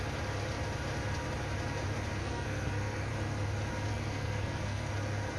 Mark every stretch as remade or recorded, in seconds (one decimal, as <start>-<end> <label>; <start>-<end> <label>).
0.0-2.2 recorded; 2.2-3.1 remade; 3.1-3.9 recorded; 3.9-4.9 remade; 4.9-5.4 recorded